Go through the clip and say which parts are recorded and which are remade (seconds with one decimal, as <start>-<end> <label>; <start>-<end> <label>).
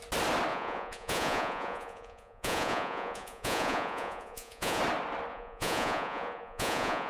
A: 0.0-0.5 recorded; 0.5-4.8 remade; 4.8-5.3 recorded; 5.3-7.1 remade